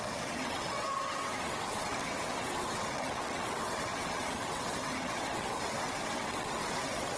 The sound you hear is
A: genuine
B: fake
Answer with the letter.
B